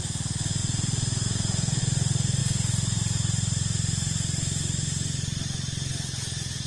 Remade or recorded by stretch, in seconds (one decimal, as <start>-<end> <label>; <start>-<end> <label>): 0.0-0.6 recorded; 0.6-1.8 remade; 1.8-6.7 recorded